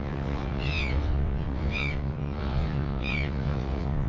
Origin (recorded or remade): remade